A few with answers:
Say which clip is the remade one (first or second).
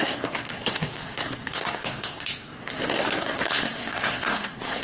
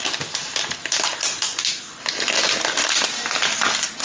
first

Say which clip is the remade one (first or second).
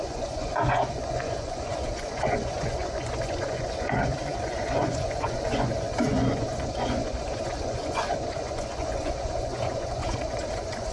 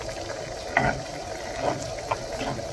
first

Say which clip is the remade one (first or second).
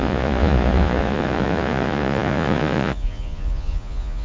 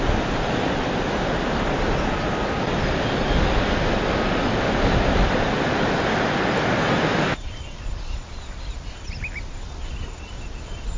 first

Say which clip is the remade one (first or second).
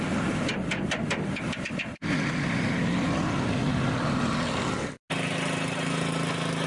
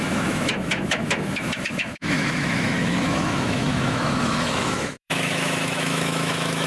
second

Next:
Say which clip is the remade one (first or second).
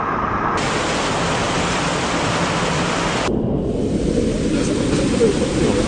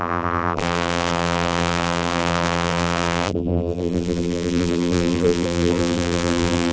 second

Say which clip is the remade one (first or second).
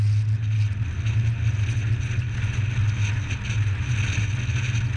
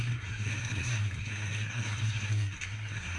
second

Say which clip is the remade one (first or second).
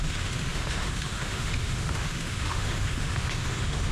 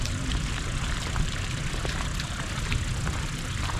first